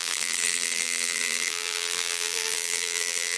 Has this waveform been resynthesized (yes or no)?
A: yes